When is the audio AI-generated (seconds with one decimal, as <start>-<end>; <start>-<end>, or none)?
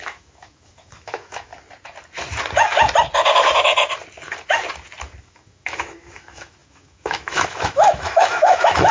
0.0-1.5; 5.2-8.9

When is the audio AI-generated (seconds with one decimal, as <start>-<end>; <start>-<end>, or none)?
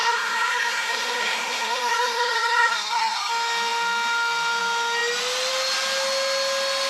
0.0-3.3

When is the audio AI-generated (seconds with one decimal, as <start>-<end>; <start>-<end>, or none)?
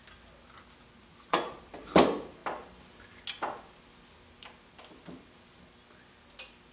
1.1-1.6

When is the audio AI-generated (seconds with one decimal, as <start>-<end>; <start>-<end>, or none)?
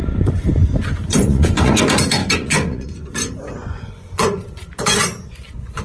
0.0-1.8; 2.2-5.8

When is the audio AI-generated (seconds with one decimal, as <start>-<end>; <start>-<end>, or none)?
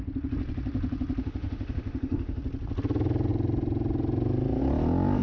1.2-2.4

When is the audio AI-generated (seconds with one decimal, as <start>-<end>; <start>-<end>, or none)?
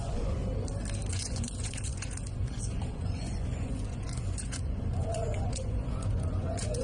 0.0-0.4; 1.1-6.8